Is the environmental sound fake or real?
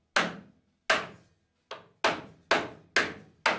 real